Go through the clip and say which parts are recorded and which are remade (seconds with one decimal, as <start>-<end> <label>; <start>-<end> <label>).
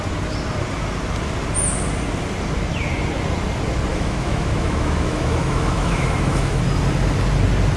0.0-3.9 recorded; 3.9-6.6 remade; 6.6-7.8 recorded